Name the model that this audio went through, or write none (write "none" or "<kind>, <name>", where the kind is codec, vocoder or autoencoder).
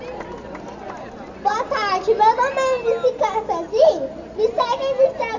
none